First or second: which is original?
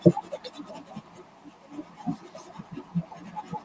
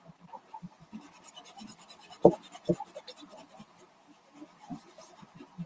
first